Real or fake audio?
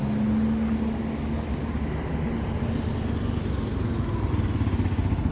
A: real